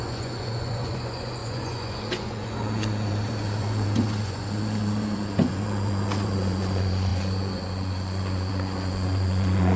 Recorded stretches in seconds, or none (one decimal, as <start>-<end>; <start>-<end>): none